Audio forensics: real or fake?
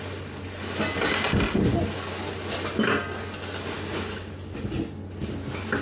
real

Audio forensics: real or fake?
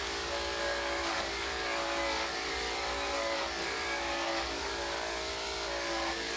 fake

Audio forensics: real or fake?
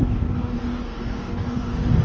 fake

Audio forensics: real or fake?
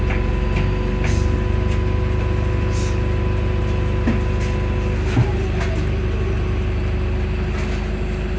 real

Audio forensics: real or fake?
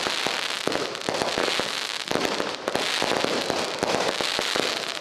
real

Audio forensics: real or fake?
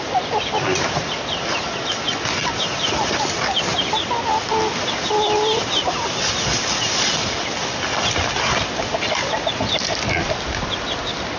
real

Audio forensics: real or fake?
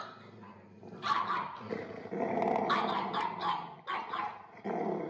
real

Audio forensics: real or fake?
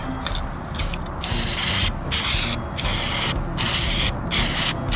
real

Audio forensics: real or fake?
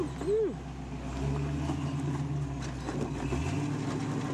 real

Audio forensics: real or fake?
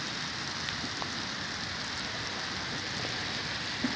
real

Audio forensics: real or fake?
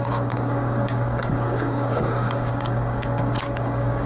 fake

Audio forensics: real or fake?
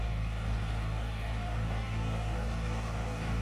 fake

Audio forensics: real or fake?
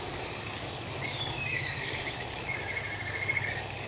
fake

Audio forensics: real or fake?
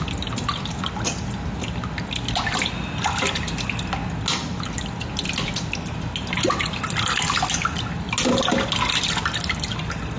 real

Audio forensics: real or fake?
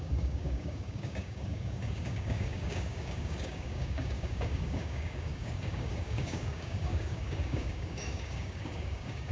fake